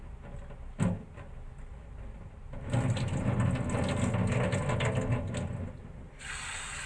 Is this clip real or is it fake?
real